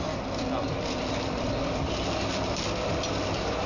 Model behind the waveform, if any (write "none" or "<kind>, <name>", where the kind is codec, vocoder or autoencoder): vocoder, BigVGAN v2